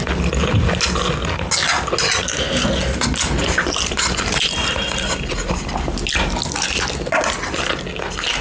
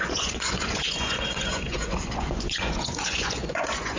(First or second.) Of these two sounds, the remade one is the second